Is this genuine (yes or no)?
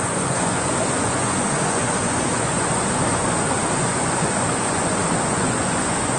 no